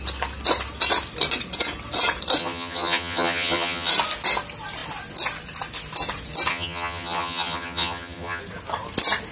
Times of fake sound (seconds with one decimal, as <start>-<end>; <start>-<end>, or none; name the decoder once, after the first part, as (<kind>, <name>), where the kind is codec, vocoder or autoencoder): 2.4-3.9 (vocoder, HiFi-GAN); 6.5-8.4